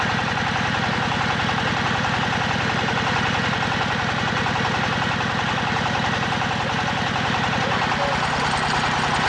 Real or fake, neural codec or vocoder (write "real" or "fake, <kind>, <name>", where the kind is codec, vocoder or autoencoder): real